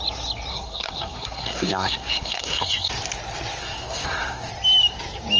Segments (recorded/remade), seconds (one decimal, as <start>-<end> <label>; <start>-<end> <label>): 0.0-0.5 recorded; 0.5-2.9 remade; 2.9-3.6 recorded; 3.6-4.5 remade; 4.5-5.4 recorded